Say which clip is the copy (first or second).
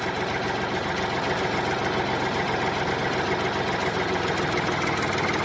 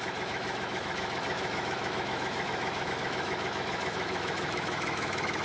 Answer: second